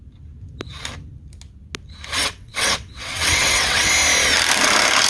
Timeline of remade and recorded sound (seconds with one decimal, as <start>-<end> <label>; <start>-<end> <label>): 0.0-2.2 recorded; 2.2-3.9 remade; 3.9-5.1 recorded